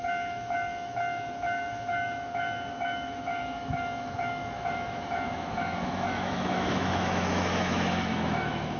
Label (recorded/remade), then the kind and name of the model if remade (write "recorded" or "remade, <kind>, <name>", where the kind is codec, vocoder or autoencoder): remade, autoencoder, DAC-VAE